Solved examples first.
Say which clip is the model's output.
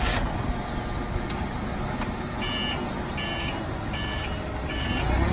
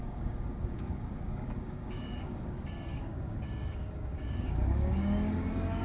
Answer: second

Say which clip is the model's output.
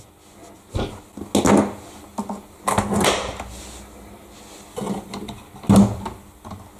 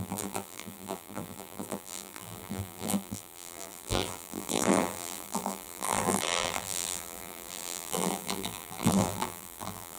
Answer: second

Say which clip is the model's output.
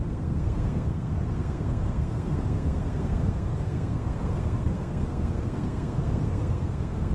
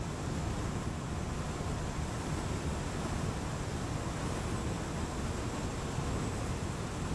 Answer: first